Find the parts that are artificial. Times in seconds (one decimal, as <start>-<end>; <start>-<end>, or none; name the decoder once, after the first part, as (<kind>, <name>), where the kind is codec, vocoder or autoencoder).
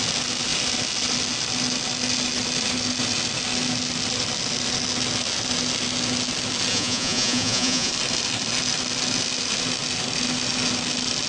6.7-7.9 (vocoder, Vocos)